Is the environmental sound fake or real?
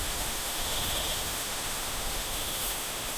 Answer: fake